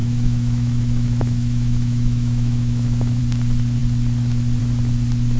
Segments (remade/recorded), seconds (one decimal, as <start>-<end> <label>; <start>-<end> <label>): 0.0-3.2 remade; 3.2-5.4 recorded